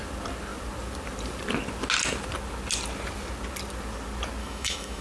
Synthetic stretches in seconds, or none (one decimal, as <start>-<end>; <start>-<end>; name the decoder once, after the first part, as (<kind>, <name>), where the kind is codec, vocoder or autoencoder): 4.4-5.0 (autoencoder, DAC-VAE)